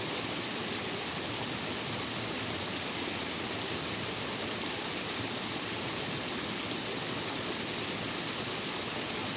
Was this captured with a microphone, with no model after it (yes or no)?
yes